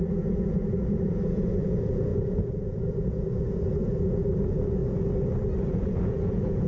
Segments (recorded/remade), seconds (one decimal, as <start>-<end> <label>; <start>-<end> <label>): 0.0-4.8 remade; 4.8-5.7 recorded; 5.7-6.7 remade